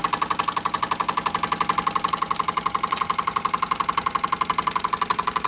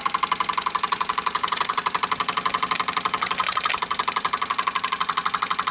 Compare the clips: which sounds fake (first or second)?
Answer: second